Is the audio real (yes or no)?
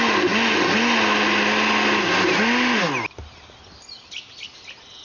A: yes